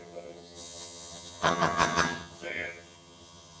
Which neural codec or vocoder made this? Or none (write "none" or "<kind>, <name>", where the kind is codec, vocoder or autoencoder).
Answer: vocoder, HiFi-GAN